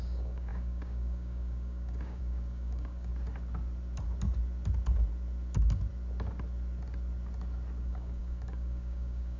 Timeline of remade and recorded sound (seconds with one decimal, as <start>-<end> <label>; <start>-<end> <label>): 0.0-3.1 remade; 3.1-7.8 recorded; 7.8-9.4 remade